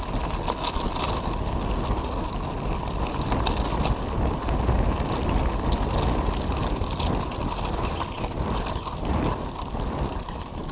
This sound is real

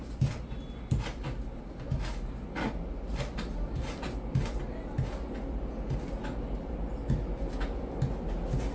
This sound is real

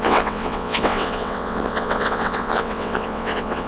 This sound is fake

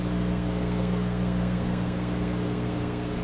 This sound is fake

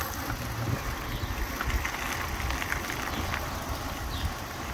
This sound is real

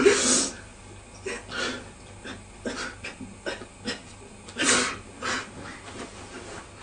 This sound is real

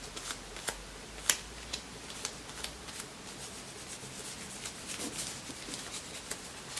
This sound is real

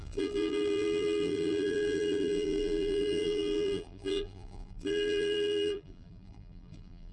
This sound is fake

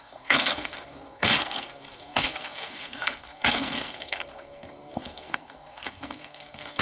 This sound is fake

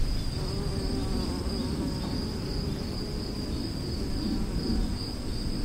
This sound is real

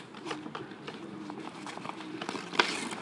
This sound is real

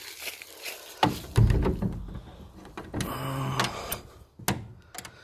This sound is real